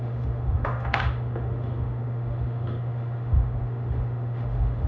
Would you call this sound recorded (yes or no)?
no